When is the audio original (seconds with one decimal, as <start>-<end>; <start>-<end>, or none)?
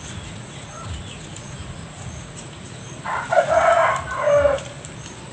3.8-5.3